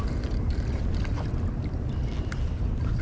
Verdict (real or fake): real